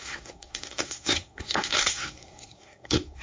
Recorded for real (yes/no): no